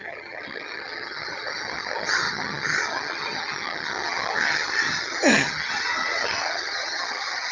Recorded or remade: remade